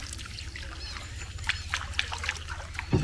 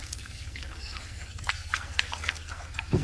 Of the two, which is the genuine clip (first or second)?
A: first